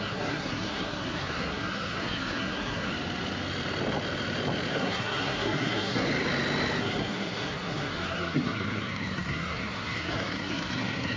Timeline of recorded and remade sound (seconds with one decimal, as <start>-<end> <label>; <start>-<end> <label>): 0.0-2.9 remade; 2.9-4.7 recorded; 4.7-6.1 remade; 6.1-6.8 recorded; 6.8-11.2 remade